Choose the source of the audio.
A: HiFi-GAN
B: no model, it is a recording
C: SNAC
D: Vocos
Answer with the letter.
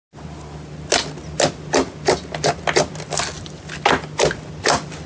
B